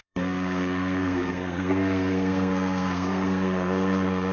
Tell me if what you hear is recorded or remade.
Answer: remade